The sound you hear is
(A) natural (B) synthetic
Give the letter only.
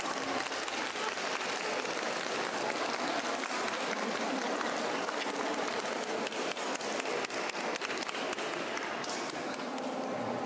A